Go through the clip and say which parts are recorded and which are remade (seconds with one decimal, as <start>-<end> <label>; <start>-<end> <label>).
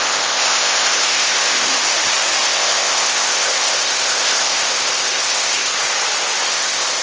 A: 0.0-1.7 remade; 1.7-2.4 recorded; 2.4-5.7 remade; 5.7-6.5 recorded; 6.5-7.0 remade